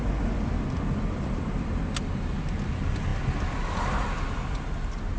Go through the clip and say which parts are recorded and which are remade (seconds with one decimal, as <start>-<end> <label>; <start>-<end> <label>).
0.0-5.2 recorded

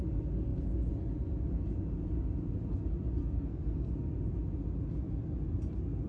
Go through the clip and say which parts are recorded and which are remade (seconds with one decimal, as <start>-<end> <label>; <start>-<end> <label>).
0.0-3.2 recorded; 3.2-3.9 remade; 3.9-6.1 recorded

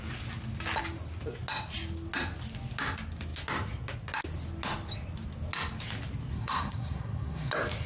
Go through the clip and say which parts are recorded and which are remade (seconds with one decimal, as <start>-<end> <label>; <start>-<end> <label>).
0.0-6.3 recorded; 6.3-7.5 remade; 7.5-7.9 recorded

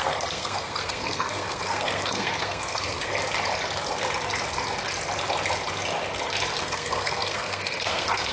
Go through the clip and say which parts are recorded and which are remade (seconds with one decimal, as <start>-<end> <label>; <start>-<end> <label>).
0.0-3.1 remade; 3.1-6.6 recorded; 6.6-8.3 remade

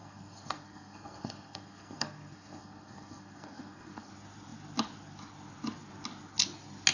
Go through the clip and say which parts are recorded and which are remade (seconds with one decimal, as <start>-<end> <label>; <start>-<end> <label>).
0.0-4.1 remade; 4.1-6.9 recorded